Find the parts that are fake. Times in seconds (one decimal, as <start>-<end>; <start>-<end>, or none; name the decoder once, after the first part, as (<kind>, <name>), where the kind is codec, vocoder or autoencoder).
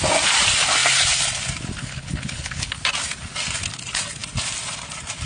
1.8-2.8 (codec, HILCodec)